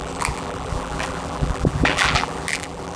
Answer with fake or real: fake